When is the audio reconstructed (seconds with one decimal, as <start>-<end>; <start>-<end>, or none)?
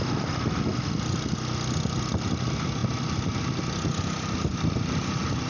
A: none